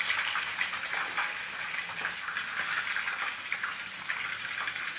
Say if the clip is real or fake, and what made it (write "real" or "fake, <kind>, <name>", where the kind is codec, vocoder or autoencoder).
real